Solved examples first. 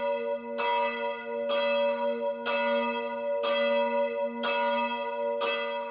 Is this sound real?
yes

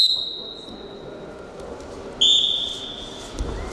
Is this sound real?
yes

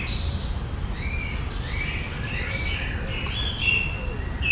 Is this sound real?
yes